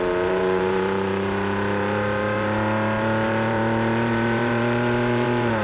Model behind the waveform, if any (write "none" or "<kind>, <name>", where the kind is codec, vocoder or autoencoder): vocoder, BigVGAN v2